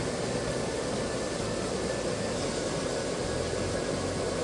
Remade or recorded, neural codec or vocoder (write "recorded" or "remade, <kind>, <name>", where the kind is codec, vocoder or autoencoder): recorded